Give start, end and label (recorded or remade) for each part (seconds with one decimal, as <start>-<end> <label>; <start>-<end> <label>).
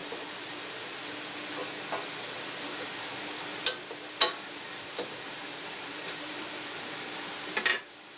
0.0-1.0 remade; 1.0-4.2 recorded; 4.2-7.6 remade; 7.6-8.2 recorded